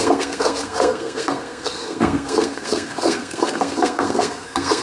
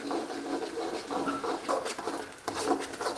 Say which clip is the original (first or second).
second